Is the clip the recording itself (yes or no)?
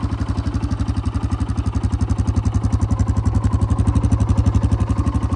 yes